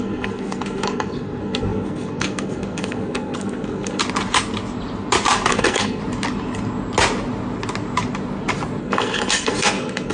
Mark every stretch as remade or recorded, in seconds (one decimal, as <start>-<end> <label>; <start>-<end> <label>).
0.0-4.0 remade; 4.0-5.5 recorded; 5.5-6.0 remade; 6.0-8.8 recorded; 8.8-10.1 remade